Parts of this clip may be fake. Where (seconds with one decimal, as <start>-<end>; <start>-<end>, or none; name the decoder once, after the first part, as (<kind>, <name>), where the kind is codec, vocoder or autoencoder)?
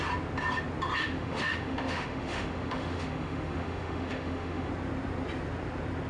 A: 1.0-4.7 (autoencoder, DAC-VAE)